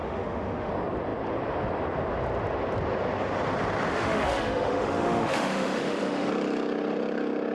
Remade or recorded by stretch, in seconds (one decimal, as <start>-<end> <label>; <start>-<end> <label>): 0.0-0.7 remade; 0.7-3.9 recorded; 3.9-6.3 remade; 6.3-7.5 recorded

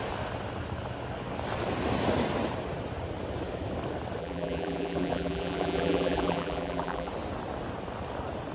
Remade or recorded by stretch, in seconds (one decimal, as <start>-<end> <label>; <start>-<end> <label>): 0.0-4.2 recorded; 4.2-7.1 remade; 7.1-8.5 recorded

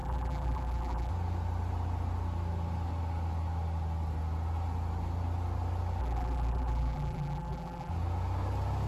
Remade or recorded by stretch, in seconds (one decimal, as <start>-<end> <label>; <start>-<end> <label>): 0.0-1.1 remade; 1.1-6.0 recorded; 6.0-7.9 remade; 7.9-8.9 recorded